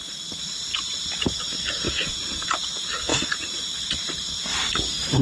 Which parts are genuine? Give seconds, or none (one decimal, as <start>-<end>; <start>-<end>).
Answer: 0.0-3.1; 4.0-4.5

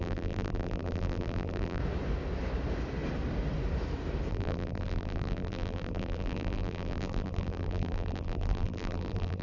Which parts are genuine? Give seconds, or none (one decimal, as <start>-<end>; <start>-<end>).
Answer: 1.8-4.3